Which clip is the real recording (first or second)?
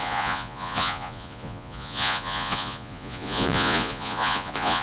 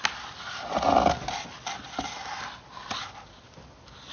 second